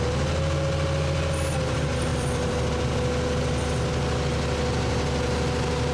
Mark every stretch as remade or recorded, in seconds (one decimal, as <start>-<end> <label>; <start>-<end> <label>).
0.0-2.1 recorded; 2.1-2.7 remade; 2.7-5.9 recorded